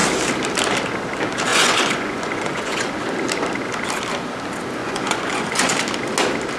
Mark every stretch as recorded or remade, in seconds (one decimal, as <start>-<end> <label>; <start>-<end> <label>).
0.0-1.5 recorded; 1.5-2.9 remade; 2.9-4.8 recorded; 4.8-5.7 remade; 5.7-6.6 recorded